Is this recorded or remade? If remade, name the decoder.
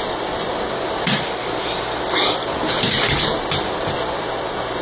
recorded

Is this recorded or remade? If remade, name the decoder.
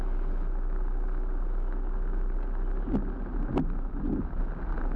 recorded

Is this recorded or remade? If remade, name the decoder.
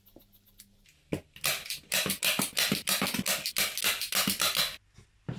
recorded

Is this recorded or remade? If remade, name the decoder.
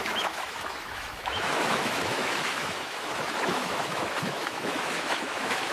remade, autoencoder, DAC-VAE